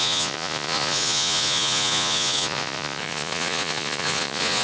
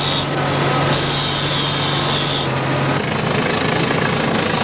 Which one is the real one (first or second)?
second